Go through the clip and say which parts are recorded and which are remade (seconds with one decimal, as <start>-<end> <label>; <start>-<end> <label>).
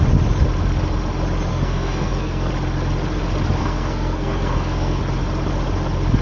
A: 0.0-1.5 recorded; 1.5-2.5 remade; 2.5-3.6 recorded; 3.6-5.0 remade; 5.0-6.2 recorded